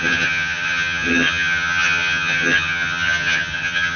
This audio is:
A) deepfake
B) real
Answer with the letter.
A